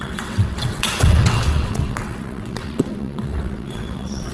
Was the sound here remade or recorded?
remade